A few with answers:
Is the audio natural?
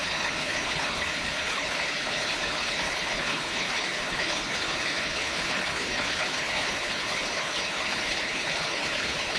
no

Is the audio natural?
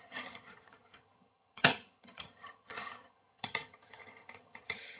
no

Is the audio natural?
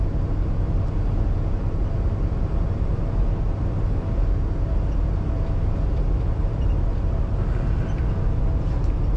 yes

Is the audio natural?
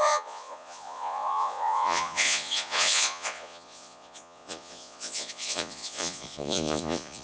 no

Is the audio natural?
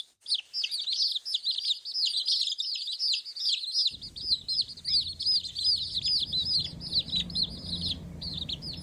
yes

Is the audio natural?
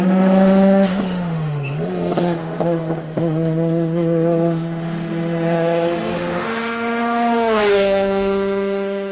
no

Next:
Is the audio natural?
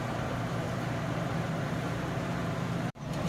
no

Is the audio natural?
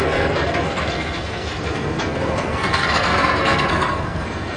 no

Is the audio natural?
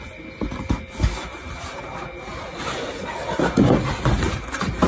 yes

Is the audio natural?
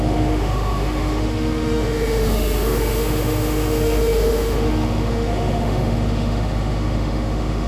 no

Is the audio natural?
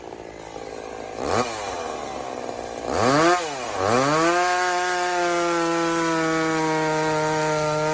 yes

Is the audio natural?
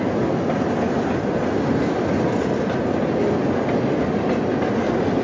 yes